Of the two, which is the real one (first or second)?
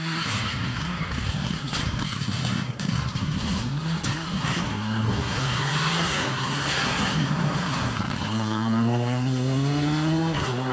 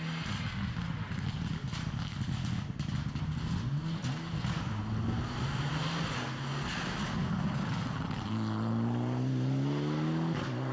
second